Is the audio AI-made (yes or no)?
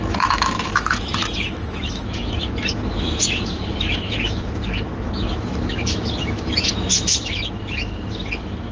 yes